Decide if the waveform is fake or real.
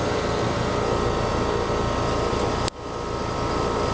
fake